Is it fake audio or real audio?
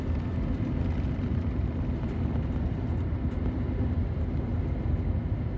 real